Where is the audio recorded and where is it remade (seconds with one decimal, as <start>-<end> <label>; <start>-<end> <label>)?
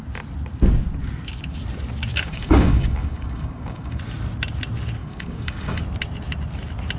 0.0-2.1 recorded; 2.1-4.0 remade; 4.0-5.0 recorded; 5.0-5.8 remade; 5.8-7.0 recorded